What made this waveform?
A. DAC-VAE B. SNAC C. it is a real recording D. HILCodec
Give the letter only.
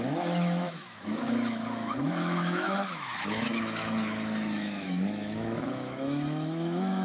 A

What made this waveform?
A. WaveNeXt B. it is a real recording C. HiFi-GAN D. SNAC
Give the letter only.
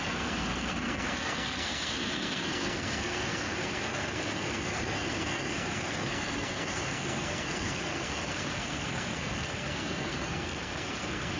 D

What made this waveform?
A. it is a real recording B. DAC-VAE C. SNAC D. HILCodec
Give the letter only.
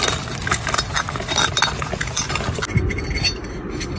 A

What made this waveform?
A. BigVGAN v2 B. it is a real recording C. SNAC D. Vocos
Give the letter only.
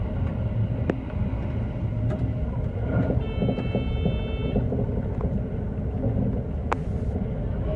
B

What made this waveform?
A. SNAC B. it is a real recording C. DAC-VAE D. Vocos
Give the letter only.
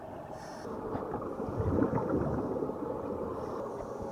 B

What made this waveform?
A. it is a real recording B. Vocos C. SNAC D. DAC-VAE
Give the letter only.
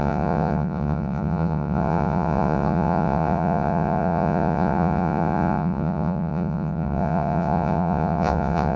B